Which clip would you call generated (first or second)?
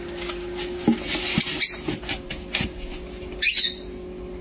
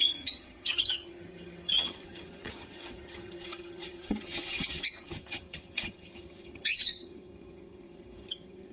second